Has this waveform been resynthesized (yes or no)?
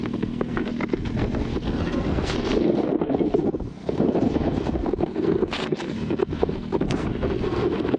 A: yes